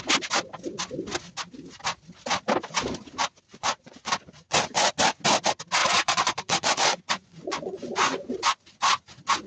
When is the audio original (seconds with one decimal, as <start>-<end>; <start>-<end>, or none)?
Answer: 0.0-3.5; 4.9-5.8; 8.3-9.5